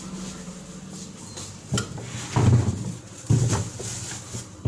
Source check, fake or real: real